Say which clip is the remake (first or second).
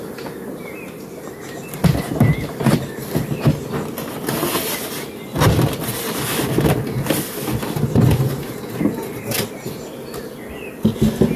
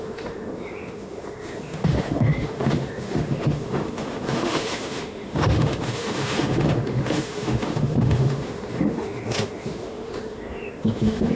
second